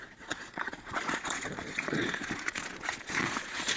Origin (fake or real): fake